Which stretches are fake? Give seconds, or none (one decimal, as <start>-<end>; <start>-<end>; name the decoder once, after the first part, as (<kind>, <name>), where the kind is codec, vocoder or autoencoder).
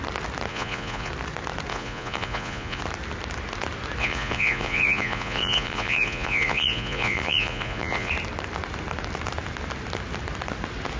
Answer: 0.5-1.1 (vocoder, Vocos); 1.7-2.8; 4.0-8.1